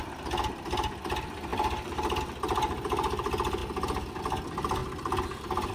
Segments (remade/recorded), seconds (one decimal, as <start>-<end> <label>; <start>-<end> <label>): 0.0-5.7 recorded